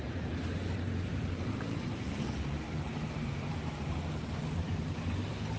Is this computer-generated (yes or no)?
yes